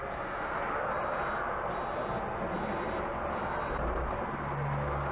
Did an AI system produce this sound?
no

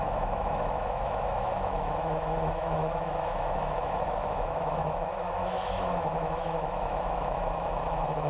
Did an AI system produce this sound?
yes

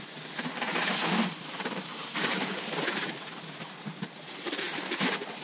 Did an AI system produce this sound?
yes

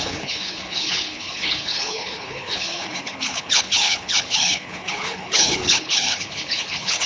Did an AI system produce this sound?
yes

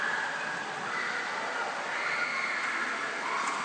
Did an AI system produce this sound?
no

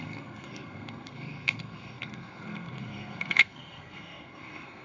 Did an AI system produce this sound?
yes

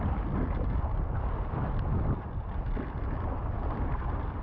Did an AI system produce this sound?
no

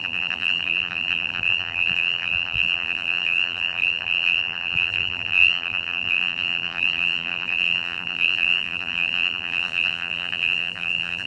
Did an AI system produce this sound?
yes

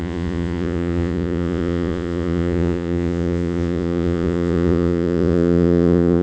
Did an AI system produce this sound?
yes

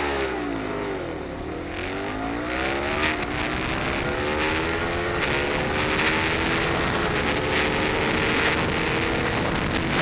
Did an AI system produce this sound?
no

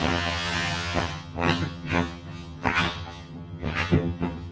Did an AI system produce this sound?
yes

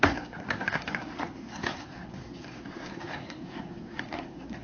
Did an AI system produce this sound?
yes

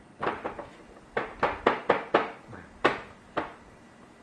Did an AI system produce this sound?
no